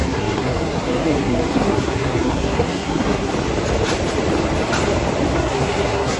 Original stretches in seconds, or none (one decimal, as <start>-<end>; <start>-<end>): 3.3-5.3